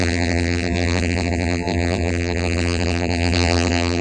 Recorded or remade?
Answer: remade